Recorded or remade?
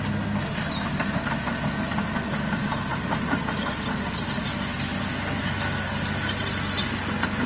recorded